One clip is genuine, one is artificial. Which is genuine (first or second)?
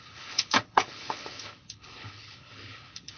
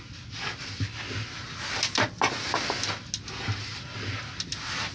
second